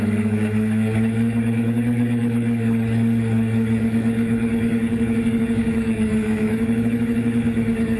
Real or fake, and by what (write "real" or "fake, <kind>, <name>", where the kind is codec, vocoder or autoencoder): fake, codec, DAC